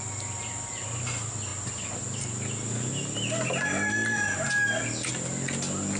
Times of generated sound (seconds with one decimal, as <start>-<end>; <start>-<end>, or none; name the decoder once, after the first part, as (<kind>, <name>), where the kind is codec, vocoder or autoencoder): none